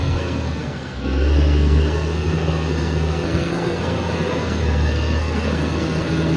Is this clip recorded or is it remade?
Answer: remade